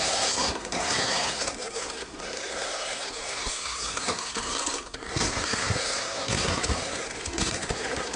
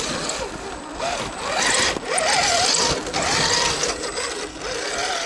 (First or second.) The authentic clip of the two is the second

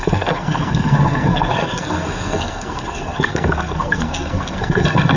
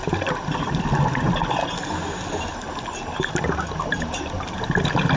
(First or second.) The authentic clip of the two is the second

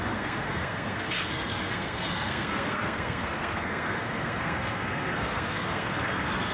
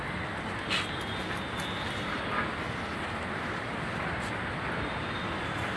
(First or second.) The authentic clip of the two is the second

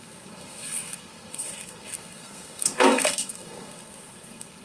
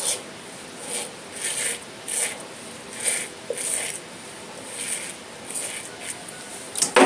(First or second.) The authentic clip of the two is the second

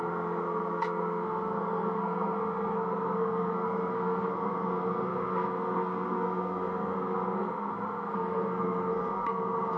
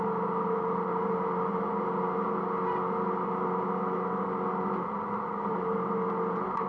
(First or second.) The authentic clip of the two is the second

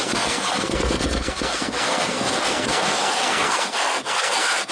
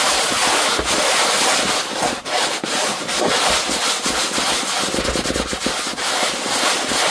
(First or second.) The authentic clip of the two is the second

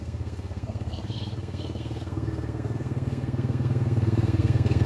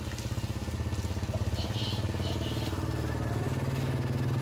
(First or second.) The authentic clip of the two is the second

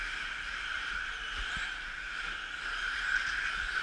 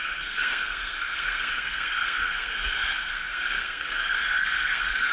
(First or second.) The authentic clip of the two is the first